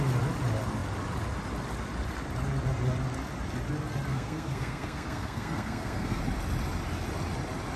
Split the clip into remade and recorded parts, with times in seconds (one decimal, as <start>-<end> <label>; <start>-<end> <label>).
0.0-4.1 recorded; 4.1-6.2 remade; 6.2-7.8 recorded